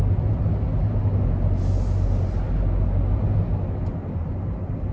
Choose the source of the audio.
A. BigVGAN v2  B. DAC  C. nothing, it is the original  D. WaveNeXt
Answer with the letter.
C